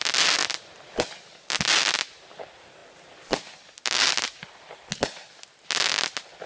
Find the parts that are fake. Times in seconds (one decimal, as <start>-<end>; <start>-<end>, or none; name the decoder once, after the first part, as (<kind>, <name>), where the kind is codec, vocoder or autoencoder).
none